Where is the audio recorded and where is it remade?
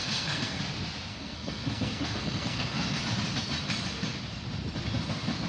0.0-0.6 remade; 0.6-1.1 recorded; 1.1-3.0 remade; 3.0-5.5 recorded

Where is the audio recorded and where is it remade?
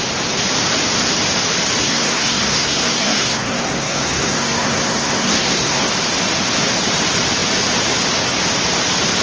0.0-1.8 recorded; 1.8-5.9 remade; 5.9-9.2 recorded